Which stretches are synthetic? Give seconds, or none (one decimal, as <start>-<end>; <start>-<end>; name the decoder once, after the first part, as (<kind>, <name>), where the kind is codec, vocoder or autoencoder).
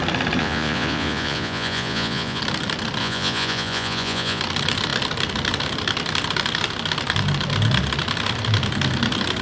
0.4-2.4 (vocoder, Vocos); 3.0-4.4